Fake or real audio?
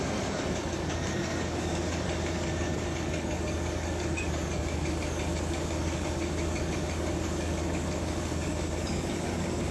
fake